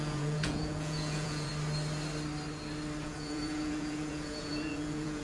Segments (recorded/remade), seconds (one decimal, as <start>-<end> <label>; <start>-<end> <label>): 0.0-1.5 remade; 1.5-3.0 recorded; 3.0-5.2 remade